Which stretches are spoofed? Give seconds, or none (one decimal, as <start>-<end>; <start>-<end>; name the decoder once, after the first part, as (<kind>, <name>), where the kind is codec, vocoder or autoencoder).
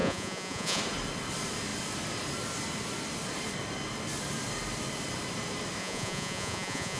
0.0-0.8 (vocoder, Vocos); 5.8-7.0